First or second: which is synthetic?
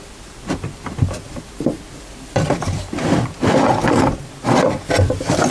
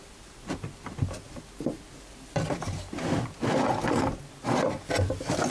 first